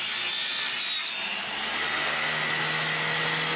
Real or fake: real